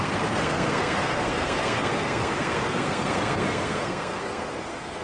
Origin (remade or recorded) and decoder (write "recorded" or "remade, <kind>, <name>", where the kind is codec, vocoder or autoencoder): remade, codec, SNAC